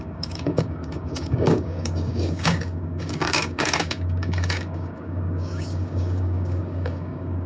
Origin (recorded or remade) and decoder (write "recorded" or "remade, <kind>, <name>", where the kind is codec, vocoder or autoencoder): remade, codec, DAC